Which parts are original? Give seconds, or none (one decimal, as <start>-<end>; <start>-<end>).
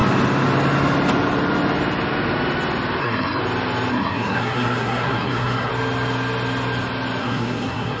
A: 0.0-3.0; 3.4-3.9; 5.7-7.2